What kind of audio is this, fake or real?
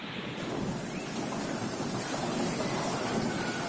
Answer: real